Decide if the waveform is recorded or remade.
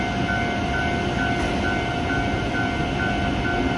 recorded